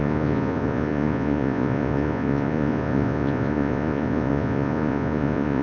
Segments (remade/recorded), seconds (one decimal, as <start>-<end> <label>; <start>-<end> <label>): 0.0-5.6 remade